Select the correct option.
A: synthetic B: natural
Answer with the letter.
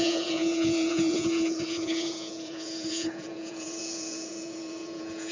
A